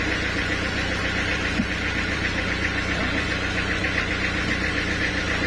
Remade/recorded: remade